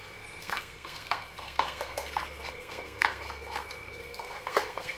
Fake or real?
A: fake